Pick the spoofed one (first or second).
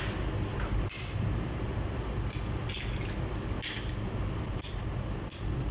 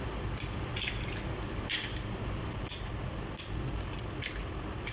second